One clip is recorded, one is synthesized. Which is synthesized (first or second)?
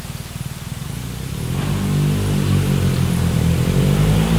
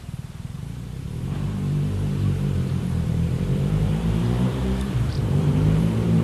second